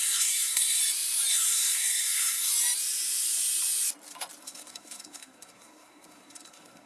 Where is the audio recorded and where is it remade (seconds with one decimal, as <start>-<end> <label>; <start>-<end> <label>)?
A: 0.0-0.8 remade; 0.8-1.3 recorded; 1.3-2.5 remade; 2.5-4.4 recorded; 4.4-6.9 remade